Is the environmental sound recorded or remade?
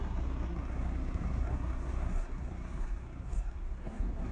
remade